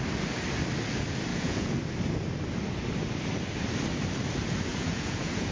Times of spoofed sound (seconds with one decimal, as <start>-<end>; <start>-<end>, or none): 1.3-1.8; 4.7-5.5